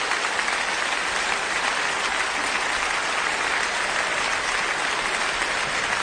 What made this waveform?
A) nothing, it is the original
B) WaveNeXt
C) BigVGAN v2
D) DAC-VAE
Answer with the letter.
A